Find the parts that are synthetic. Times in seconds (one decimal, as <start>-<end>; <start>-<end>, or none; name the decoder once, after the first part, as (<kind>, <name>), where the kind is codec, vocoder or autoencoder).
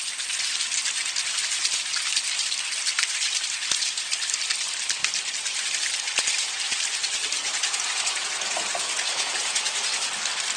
7.4-10.1 (vocoder, Vocos)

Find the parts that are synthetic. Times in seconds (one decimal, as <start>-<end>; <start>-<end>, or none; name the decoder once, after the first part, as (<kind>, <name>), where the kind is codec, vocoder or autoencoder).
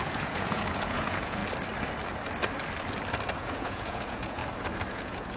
0.0-1.4 (vocoder, Vocos); 3.4-4.4; 4.9-5.4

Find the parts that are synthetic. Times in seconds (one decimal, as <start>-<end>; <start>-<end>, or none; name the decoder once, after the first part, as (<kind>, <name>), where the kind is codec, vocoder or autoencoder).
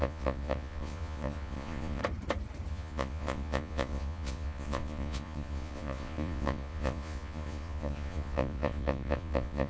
0.0-2.0 (vocoder, Vocos); 2.7-9.7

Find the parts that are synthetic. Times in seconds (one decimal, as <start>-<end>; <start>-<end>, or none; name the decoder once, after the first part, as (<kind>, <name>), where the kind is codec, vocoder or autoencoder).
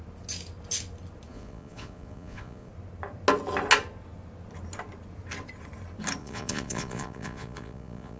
1.3-2.7 (vocoder, Vocos); 6.2-8.2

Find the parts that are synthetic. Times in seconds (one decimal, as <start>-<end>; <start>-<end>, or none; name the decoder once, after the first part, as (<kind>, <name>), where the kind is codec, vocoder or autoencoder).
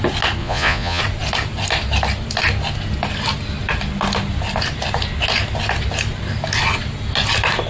0.4-1.0 (vocoder, Vocos)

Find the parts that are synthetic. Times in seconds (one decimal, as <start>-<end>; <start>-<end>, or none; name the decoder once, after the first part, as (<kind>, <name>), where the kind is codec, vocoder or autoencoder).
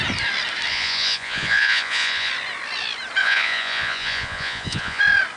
0.7-2.3 (vocoder, Vocos); 3.2-5.0